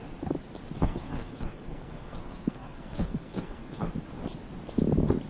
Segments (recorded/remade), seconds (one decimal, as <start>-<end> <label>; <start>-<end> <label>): 0.0-0.8 recorded; 0.8-3.9 remade; 3.9-5.3 recorded